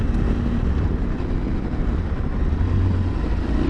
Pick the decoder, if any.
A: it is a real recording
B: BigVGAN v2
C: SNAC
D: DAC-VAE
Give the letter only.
A